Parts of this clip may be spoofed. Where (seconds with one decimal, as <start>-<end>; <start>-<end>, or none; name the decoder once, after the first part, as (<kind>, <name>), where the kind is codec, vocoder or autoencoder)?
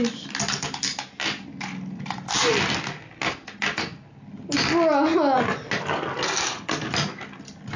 none